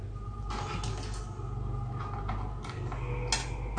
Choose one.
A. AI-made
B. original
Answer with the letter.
B